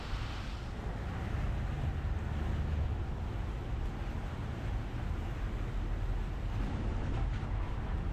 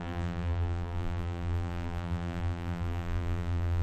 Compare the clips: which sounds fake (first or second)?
second